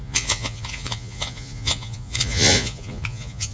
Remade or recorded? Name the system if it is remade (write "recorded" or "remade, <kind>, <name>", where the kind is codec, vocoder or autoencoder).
remade, vocoder, Vocos